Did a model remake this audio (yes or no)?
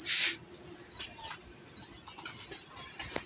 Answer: no